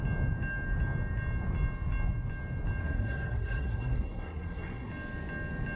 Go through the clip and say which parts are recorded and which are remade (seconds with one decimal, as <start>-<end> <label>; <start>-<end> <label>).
0.0-2.8 recorded; 2.8-4.9 remade; 4.9-5.8 recorded